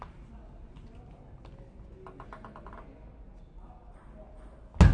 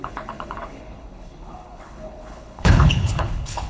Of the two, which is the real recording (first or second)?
first